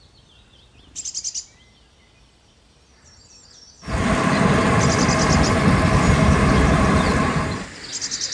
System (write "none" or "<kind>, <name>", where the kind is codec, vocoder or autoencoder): none